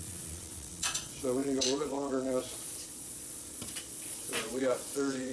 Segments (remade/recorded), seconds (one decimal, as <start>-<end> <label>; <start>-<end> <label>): 0.0-5.3 remade